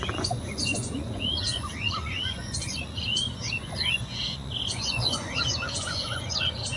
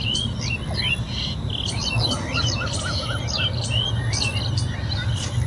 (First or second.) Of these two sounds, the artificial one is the first